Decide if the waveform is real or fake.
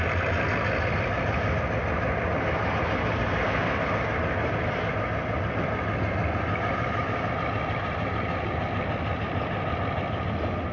real